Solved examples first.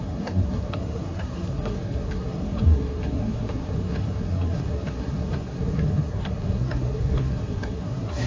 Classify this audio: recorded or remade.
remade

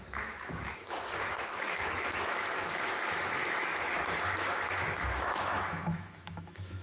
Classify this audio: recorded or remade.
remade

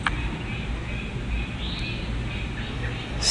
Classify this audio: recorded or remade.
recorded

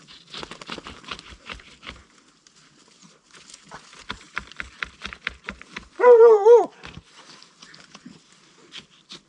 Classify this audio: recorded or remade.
recorded